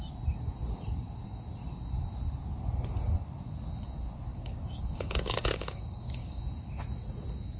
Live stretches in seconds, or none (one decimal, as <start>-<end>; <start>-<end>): 0.0-4.3; 6.4-7.6